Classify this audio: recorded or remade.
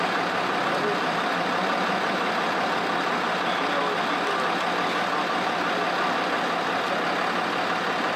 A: recorded